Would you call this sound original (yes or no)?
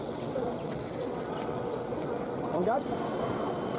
no